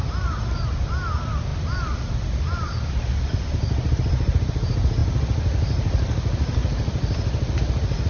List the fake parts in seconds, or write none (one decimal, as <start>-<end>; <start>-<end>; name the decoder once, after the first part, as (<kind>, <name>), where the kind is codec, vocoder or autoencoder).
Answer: none